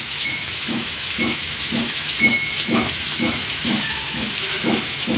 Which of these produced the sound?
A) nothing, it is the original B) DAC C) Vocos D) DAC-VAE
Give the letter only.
D